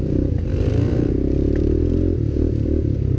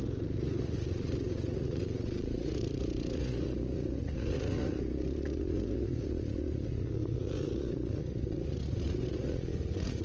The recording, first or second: first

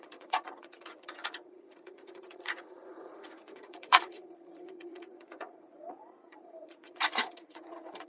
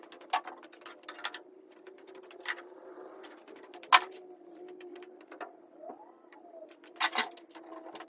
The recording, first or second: second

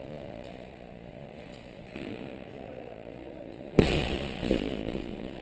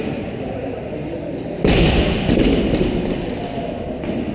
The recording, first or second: second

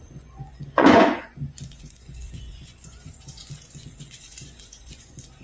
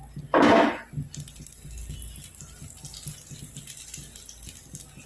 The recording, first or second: second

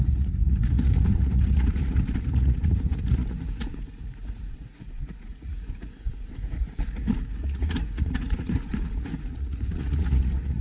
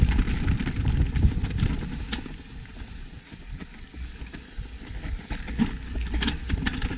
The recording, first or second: second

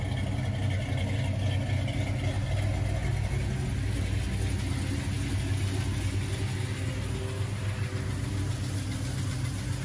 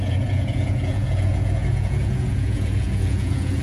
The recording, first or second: first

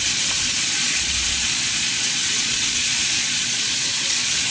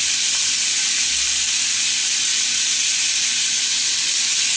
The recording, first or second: second